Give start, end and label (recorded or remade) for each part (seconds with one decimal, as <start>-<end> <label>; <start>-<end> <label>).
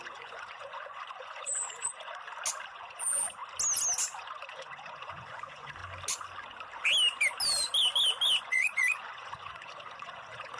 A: 0.0-2.1 remade; 2.1-2.7 recorded; 2.7-3.4 remade; 3.4-4.2 recorded; 4.2-5.8 remade; 5.8-8.4 recorded; 8.4-10.6 remade